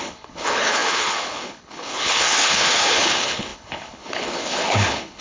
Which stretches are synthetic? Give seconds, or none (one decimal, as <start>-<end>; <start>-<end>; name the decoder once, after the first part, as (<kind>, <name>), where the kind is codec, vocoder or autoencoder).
0.0-5.2 (codec, HILCodec)